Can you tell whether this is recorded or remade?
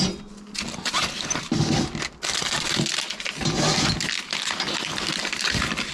recorded